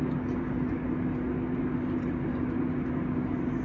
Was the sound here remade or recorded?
recorded